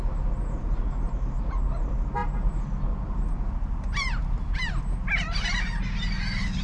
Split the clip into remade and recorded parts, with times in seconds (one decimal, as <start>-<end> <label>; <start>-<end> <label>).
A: 0.0-6.6 recorded